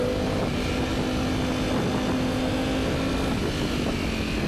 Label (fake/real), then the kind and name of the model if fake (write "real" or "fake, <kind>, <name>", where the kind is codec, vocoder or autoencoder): real